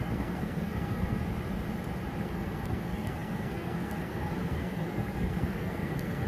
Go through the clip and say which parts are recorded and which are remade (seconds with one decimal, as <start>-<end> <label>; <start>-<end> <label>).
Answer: 0.0-1.2 remade; 1.2-2.2 recorded; 2.2-6.3 remade